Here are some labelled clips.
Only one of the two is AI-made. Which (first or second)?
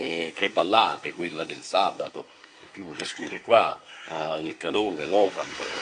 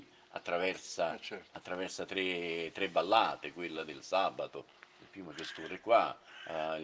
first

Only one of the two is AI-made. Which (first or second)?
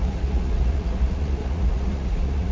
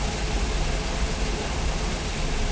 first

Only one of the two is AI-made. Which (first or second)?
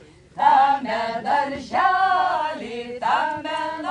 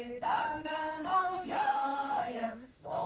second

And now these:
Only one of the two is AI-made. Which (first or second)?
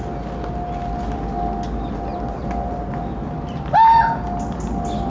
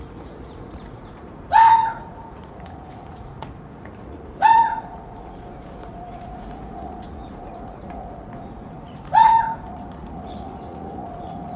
second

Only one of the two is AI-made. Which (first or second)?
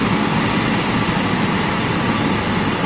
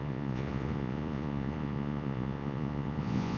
second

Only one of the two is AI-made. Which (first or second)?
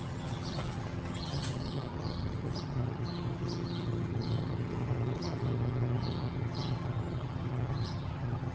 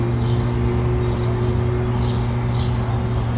first